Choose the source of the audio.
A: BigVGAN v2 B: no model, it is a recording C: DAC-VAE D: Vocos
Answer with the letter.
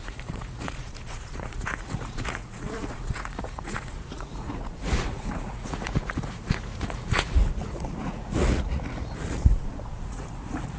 D